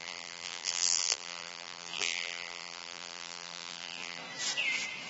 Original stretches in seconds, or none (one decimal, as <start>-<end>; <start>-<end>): 4.2-5.1